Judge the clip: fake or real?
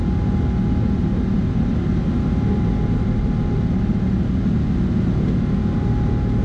real